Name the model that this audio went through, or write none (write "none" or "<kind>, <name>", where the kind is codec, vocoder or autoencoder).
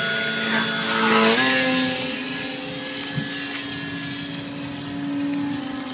none